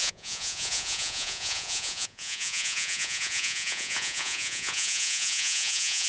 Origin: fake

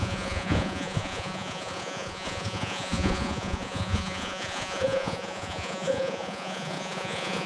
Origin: fake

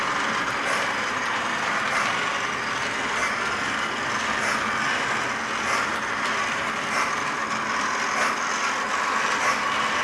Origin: real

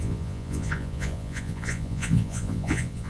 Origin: fake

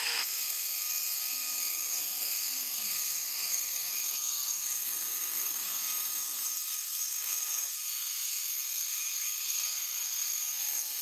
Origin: fake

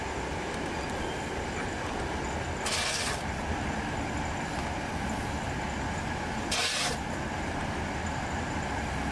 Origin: real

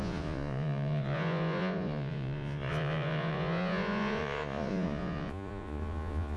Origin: fake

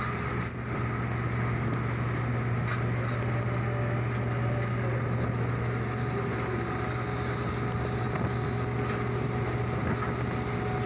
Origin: real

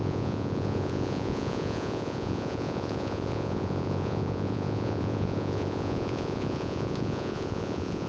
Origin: fake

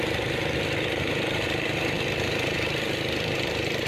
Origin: fake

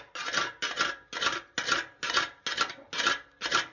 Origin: real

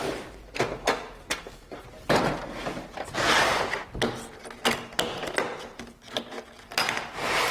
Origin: real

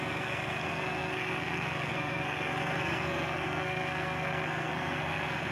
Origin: fake